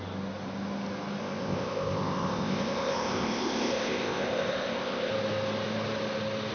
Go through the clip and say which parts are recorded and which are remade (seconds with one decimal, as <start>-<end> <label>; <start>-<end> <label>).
0.0-1.2 recorded; 1.2-5.1 remade; 5.1-6.5 recorded